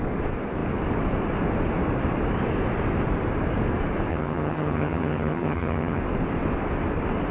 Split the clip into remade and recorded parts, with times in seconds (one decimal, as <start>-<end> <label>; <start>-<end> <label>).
0.0-4.1 recorded; 4.1-6.0 remade; 6.0-7.3 recorded